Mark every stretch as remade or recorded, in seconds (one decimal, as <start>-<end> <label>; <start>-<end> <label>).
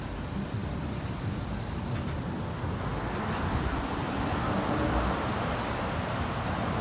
0.0-6.8 recorded